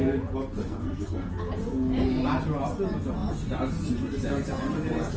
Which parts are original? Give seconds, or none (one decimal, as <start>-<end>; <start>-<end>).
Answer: 0.0-0.6; 1.3-5.2